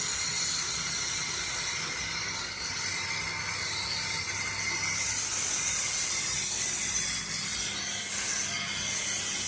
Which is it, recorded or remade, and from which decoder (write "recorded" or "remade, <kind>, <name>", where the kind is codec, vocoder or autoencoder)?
recorded